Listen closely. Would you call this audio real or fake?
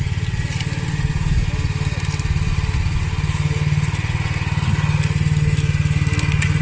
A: real